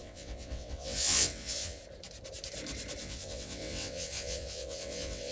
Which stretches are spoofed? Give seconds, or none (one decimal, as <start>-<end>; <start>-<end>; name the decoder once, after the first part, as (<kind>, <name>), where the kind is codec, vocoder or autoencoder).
0.0-1.8 (vocoder, WaveNeXt); 3.0-5.3